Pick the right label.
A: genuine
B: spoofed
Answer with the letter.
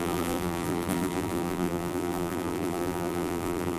B